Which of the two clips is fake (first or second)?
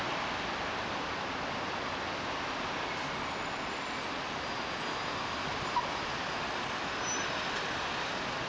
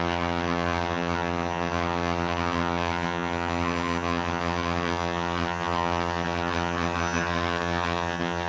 second